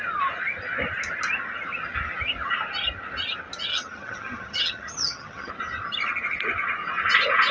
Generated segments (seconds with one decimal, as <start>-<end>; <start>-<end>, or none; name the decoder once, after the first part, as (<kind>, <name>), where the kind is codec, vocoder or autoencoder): 3.7-5.5 (vocoder, HiFi-GAN)